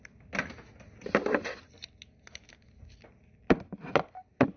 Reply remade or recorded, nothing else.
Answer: recorded